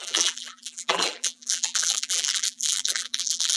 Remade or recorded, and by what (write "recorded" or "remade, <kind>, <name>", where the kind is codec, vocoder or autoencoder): remade, vocoder, BigVGAN v2